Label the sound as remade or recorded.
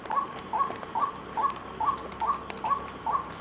recorded